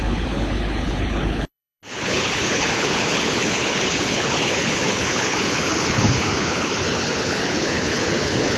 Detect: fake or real fake